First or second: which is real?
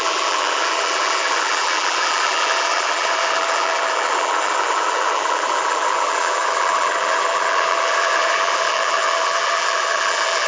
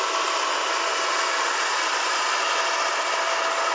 second